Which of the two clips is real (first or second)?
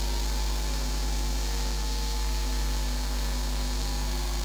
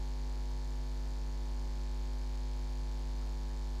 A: second